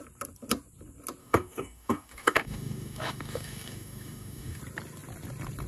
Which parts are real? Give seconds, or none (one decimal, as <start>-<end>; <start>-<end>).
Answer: 0.0-1.2; 4.6-5.7